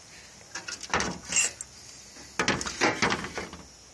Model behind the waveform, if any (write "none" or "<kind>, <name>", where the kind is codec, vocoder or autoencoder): none